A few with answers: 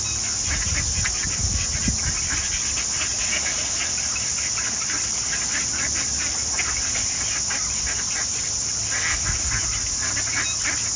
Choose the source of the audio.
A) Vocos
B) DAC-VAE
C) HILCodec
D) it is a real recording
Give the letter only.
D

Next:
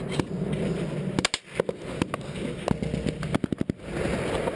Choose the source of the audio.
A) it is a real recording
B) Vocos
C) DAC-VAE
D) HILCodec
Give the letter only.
A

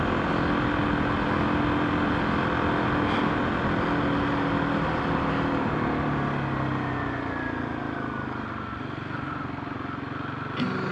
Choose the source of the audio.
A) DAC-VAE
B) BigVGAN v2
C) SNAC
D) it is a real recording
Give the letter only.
D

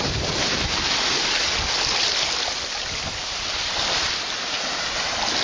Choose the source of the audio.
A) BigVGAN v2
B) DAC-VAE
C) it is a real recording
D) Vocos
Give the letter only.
C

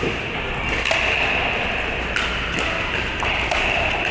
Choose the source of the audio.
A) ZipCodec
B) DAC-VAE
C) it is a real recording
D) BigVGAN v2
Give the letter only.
C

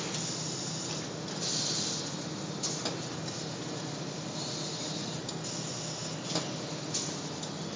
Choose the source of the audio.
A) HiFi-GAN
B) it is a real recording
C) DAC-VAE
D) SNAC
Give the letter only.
B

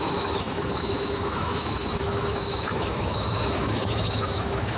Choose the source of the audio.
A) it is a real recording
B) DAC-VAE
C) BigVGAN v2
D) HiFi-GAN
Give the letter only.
B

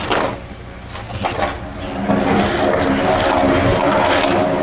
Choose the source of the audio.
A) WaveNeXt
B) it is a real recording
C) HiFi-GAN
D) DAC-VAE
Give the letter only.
B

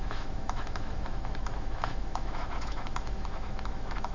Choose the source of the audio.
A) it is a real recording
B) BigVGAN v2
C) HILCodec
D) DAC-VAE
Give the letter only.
D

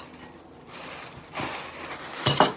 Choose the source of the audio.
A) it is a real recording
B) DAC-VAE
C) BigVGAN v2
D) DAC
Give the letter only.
A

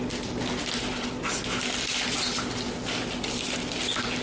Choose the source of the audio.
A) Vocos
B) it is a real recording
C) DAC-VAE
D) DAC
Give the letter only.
B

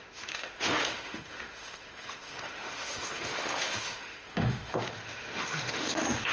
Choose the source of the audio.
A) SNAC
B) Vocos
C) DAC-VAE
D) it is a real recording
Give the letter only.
C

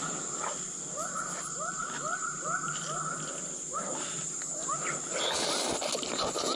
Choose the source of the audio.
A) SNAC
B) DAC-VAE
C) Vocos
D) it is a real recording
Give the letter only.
D